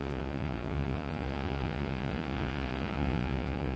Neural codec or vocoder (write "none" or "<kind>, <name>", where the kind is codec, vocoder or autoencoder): vocoder, Vocos